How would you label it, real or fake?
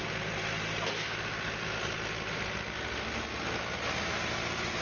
real